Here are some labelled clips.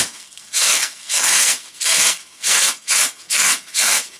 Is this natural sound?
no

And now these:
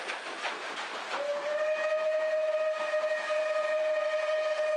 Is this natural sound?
yes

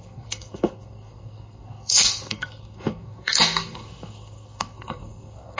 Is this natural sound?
no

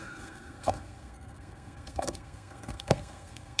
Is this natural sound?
no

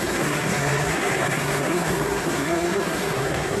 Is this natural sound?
no